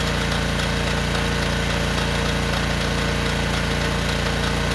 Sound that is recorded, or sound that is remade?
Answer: recorded